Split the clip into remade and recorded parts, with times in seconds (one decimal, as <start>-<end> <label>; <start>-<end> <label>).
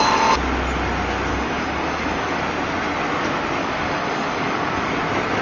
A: 0.0-1.3 recorded; 1.3-2.4 remade; 2.4-3.6 recorded; 3.6-4.9 remade; 4.9-5.4 recorded